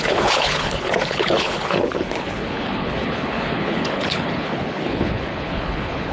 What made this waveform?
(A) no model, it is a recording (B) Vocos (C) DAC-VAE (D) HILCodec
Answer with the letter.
D